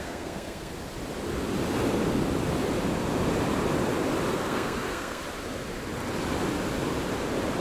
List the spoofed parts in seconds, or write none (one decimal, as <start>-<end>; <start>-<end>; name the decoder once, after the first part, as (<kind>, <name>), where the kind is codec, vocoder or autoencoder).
0.0-0.7 (codec, SNAC); 4.3-5.2

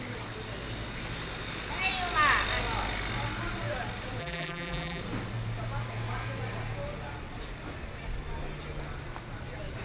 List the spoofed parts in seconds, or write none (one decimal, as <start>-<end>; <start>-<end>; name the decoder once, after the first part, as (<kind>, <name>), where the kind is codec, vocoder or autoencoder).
4.2-5.0 (vocoder, BigVGAN v2)

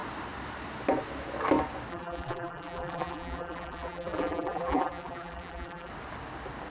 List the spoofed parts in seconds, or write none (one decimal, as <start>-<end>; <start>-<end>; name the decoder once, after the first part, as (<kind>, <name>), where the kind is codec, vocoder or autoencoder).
1.9-5.9 (vocoder, BigVGAN v2)

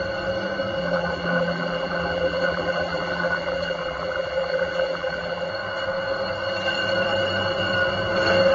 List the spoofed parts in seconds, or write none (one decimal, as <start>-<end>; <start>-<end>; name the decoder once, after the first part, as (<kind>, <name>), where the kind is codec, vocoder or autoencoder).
0.8-5.5 (vocoder, BigVGAN v2)

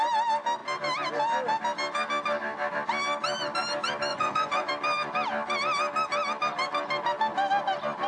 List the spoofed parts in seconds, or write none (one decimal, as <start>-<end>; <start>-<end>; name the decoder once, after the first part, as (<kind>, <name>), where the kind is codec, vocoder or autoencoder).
4.1-4.7 (vocoder, Vocos)

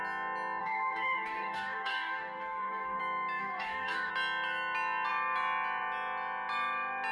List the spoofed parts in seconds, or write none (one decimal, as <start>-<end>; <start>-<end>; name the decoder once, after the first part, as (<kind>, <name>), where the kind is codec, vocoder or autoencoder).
0.6-3.0 (codec, DAC); 3.4-4.1

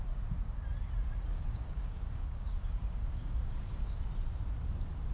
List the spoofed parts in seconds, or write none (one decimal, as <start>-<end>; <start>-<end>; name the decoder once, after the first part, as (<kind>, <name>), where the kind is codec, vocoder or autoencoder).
1.3-4.0 (codec, DAC)

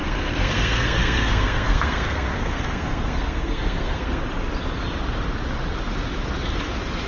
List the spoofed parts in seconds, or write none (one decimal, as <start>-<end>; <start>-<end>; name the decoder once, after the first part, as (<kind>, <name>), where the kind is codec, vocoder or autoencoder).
0.0-4.2 (codec, SNAC)